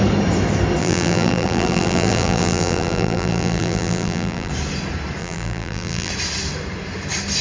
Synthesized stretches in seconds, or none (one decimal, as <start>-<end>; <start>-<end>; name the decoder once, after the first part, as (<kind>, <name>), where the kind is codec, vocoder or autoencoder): 0.8-4.5 (vocoder, BigVGAN v2); 5.2-6.1